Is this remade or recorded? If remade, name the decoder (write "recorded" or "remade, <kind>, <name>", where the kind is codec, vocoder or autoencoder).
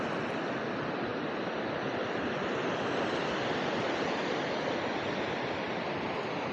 recorded